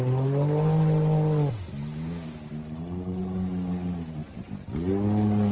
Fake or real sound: real